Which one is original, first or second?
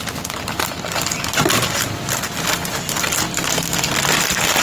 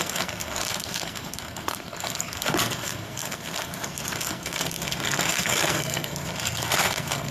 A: first